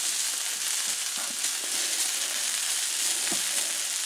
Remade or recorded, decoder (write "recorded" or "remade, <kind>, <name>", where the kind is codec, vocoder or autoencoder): recorded